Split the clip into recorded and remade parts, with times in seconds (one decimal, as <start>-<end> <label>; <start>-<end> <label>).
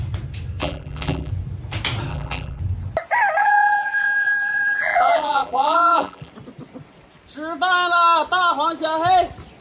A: 0.0-0.6 recorded; 0.6-1.3 remade; 1.3-2.1 recorded; 2.1-2.6 remade; 2.6-3.4 recorded; 3.4-6.3 remade; 6.3-9.6 recorded